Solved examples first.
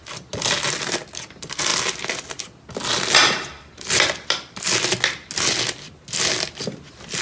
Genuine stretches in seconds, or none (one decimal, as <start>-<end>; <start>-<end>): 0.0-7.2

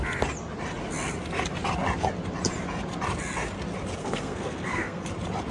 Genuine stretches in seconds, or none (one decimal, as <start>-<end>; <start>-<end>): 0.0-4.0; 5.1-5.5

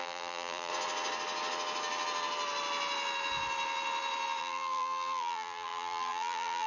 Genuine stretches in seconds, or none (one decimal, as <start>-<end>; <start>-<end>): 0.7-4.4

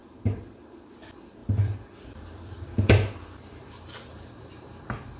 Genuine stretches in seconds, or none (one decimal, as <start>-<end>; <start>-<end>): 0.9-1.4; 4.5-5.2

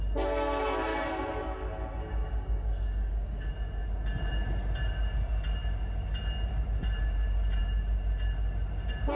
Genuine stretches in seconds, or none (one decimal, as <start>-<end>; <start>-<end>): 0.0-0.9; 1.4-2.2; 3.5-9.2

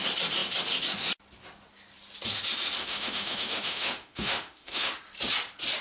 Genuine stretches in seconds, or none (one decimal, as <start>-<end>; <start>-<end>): 0.0-2.8; 5.0-5.8